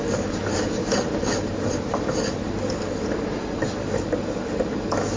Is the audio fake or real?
real